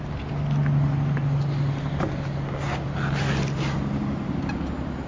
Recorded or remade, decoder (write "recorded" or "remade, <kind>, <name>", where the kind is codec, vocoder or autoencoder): recorded